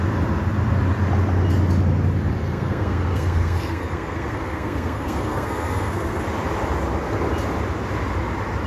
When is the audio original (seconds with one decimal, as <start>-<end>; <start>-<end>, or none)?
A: 0.0-2.4; 6.2-8.7